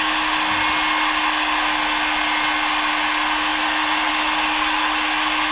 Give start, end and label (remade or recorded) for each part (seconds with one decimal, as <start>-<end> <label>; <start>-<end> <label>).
0.0-3.5 recorded; 3.5-4.1 remade; 4.1-5.5 recorded